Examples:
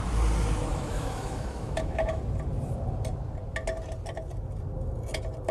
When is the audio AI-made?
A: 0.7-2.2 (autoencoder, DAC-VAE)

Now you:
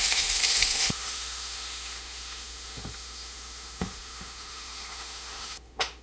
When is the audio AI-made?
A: 0.0-6.0 (autoencoder, DAC-VAE)

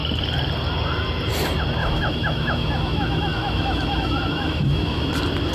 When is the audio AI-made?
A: 1.8-5.1 (autoencoder, DAC-VAE)

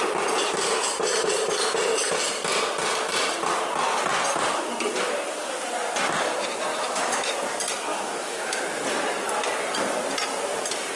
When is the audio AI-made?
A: 6.7-7.3 (autoencoder, DAC-VAE); 7.9-8.6

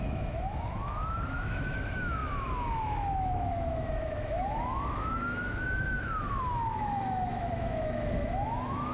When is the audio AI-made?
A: 0.0-8.9 (autoencoder, DAC-VAE)

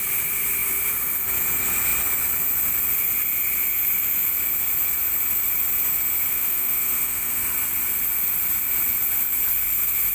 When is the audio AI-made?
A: 6.3-7.4 (autoencoder, DAC-VAE)